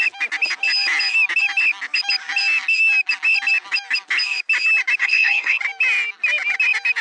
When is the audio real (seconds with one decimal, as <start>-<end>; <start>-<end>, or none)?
0.0-5.0; 5.6-7.0